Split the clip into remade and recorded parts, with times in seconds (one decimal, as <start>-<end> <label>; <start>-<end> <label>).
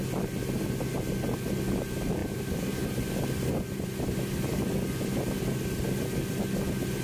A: 0.0-7.0 recorded